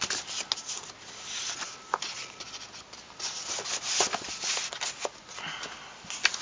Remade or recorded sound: recorded